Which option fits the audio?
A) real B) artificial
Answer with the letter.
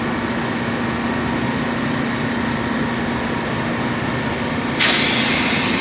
A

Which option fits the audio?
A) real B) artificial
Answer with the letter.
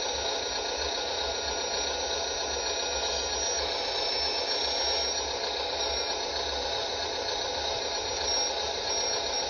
A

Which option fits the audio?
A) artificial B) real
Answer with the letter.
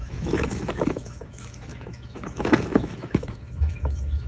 A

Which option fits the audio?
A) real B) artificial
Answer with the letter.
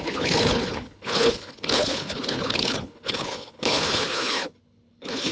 B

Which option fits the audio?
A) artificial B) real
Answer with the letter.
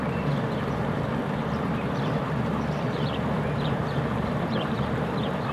A